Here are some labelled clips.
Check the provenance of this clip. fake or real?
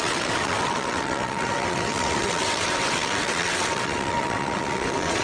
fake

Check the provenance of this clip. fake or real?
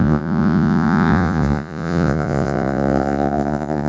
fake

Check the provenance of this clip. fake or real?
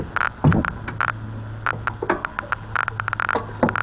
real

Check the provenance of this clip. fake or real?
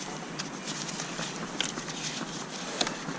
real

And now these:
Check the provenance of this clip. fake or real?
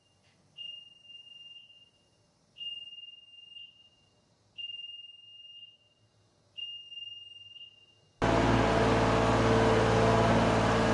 real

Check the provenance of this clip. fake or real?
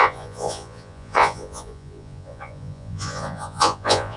fake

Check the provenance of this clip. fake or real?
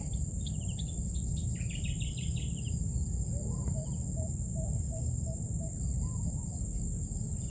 real